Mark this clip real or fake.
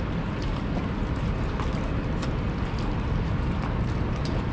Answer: real